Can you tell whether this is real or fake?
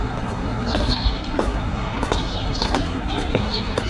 fake